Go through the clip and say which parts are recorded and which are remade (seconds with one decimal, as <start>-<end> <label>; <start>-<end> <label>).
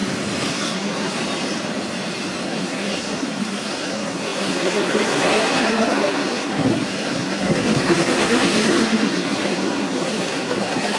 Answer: 0.0-0.5 recorded; 0.5-1.2 remade; 1.2-2.4 recorded; 2.4-11.0 remade